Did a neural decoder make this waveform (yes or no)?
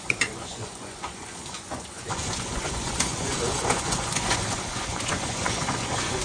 yes